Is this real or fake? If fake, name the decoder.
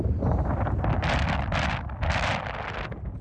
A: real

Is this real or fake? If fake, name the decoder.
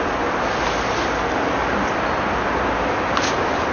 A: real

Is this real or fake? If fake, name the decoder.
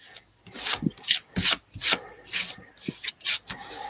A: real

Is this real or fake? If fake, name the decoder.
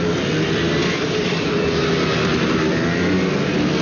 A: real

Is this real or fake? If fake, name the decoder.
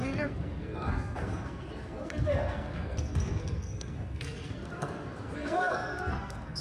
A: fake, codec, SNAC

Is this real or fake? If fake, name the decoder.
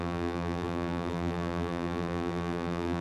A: fake, vocoder, BigVGAN v2